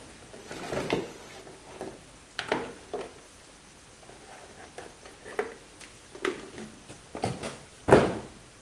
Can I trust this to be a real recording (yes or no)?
yes